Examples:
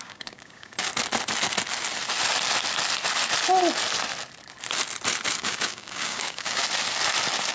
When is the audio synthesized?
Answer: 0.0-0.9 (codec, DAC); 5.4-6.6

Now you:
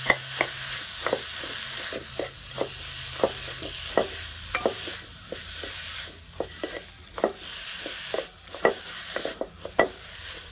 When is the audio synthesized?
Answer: none

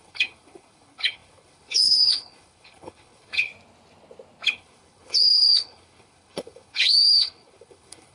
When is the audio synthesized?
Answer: 0.0-3.5 (codec, HILCodec); 4.5-8.1

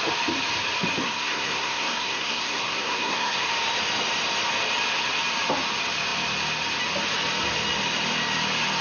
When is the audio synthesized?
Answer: 1.0-3.5 (codec, SNAC)

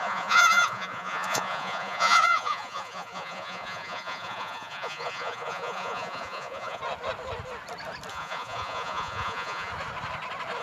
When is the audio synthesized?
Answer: 0.0-6.8 (vocoder, Vocos); 8.1-9.7